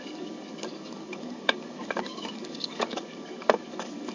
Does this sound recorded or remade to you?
remade